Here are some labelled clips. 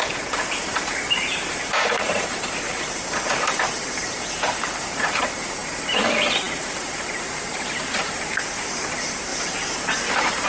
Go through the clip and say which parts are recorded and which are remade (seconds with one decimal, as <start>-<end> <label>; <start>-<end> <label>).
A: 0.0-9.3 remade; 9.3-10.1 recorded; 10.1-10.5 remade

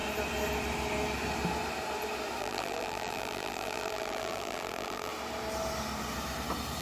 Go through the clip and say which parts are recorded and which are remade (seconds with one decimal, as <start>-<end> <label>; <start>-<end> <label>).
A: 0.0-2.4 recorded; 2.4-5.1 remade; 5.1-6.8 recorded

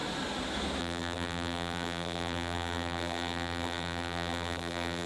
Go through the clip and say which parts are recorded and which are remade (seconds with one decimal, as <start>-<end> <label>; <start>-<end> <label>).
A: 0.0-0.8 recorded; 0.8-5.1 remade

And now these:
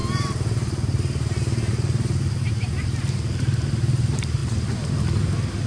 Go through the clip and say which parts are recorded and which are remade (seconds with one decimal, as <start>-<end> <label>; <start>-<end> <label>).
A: 0.0-5.7 remade

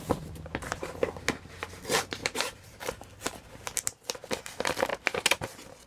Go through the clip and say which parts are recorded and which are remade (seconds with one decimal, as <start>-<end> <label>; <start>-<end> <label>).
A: 0.0-2.2 recorded; 2.2-3.5 remade; 3.5-5.9 recorded

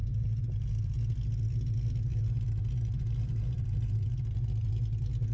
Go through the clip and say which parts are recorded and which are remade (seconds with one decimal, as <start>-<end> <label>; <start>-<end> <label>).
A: 0.0-0.9 remade; 0.9-2.1 recorded; 2.1-4.7 remade; 4.7-5.3 recorded